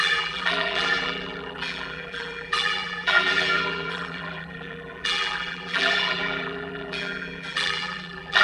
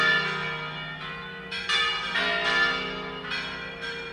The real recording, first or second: second